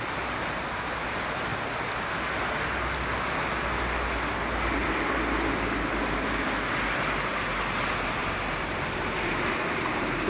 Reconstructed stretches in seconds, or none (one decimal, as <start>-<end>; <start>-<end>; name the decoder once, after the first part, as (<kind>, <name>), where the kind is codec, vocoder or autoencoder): 8.2-9.3 (vocoder, BigVGAN v2)